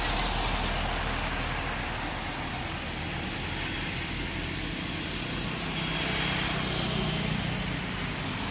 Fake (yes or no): no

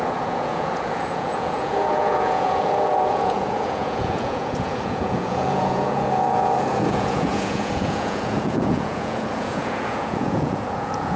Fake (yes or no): yes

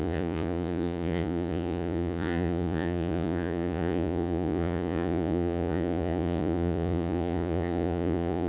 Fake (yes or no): yes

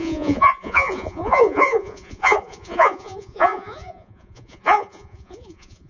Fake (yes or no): yes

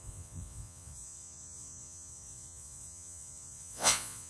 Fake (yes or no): yes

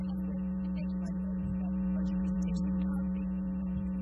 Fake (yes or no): yes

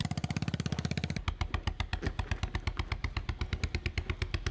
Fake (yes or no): no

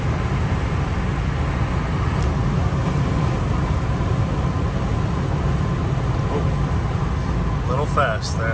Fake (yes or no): no